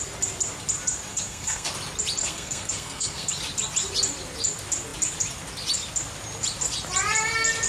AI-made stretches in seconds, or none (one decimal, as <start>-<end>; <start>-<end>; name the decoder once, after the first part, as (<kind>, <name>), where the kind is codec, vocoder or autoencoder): 1.1-1.7 (codec, SNAC); 2.2-3.3